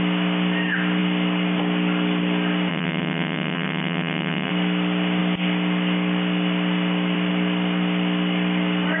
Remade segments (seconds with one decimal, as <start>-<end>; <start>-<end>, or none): 2.7-4.5